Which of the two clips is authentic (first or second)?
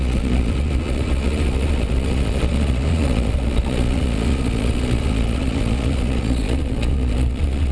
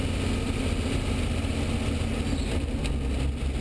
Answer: second